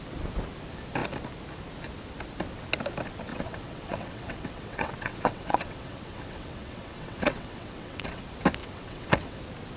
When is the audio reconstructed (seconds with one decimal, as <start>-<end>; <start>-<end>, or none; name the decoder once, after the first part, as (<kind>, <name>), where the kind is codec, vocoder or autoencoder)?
3.3-8.2 (vocoder, WaveNeXt); 8.6-9.4